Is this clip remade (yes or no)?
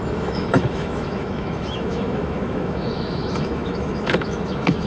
yes